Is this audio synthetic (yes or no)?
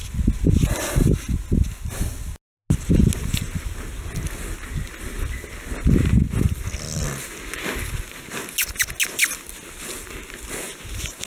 no